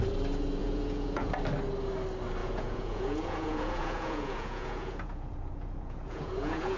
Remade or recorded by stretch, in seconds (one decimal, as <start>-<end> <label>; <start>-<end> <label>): 0.0-0.6 recorded; 0.6-1.3 remade; 1.3-2.4 recorded; 2.4-6.8 remade